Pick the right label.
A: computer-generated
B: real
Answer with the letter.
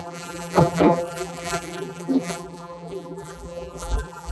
A